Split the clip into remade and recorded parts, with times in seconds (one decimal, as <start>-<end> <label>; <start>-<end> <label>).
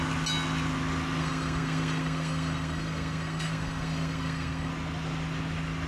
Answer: 0.0-1.2 recorded; 1.2-4.7 remade; 4.7-5.9 recorded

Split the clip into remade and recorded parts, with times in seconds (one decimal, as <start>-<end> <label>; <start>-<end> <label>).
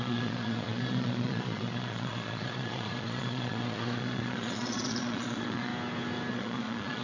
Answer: 0.0-5.7 remade; 5.7-6.3 recorded; 6.3-7.0 remade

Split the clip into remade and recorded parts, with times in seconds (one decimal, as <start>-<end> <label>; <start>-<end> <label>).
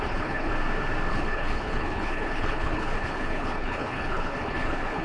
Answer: 0.0-0.5 remade; 0.5-1.1 recorded; 1.1-5.0 remade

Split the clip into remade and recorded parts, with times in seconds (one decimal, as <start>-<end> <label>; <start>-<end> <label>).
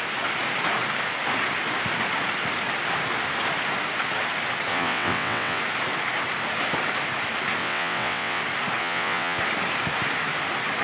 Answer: 0.0-4.7 recorded; 4.7-5.6 remade; 5.6-7.6 recorded; 7.6-8.4 remade; 8.4-8.8 recorded; 8.8-9.4 remade; 9.4-10.8 recorded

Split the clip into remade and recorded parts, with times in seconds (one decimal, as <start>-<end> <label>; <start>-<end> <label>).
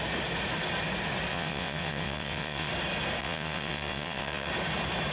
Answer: 0.0-1.3 recorded; 1.3-2.7 remade; 2.7-3.2 recorded; 3.2-4.5 remade; 4.5-5.1 recorded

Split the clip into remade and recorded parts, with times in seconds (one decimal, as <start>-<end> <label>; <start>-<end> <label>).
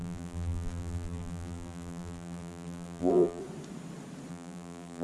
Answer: 0.0-3.4 remade; 3.4-4.3 recorded; 4.3-5.0 remade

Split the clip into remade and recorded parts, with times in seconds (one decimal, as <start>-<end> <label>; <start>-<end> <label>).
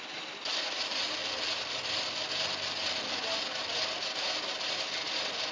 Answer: 0.0-5.5 recorded